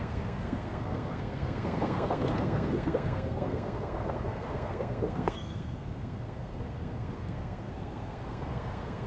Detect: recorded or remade remade